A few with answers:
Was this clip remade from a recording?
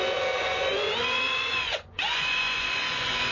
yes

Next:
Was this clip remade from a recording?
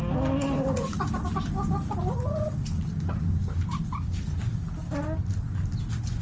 no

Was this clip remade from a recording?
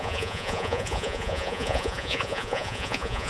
yes